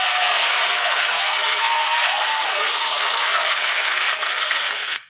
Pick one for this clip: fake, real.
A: fake